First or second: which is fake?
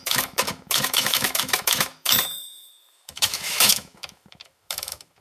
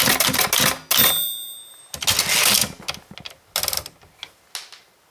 first